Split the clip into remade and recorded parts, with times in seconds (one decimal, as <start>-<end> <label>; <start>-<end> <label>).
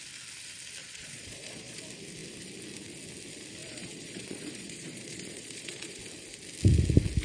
0.0-0.8 recorded; 0.8-1.8 remade; 1.8-3.6 recorded; 3.6-6.0 remade; 6.0-7.2 recorded